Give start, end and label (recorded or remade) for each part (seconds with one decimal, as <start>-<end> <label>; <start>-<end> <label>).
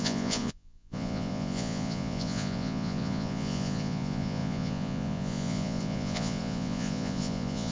0.0-7.7 remade